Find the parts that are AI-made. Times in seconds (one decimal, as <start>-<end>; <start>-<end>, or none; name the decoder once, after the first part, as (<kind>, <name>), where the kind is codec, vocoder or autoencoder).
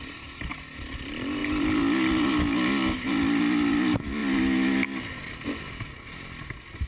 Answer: none